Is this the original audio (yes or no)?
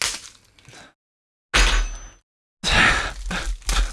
yes